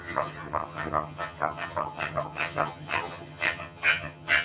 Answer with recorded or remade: remade